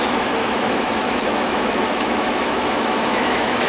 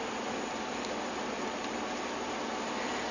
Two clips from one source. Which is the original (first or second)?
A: second